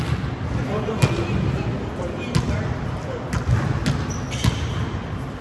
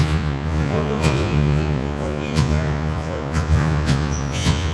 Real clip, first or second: first